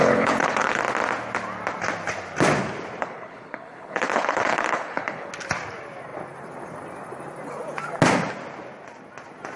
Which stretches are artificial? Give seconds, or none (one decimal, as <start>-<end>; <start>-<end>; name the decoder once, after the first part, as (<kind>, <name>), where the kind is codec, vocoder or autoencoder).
0.0-0.8 (codec, HILCodec); 3.0-5.3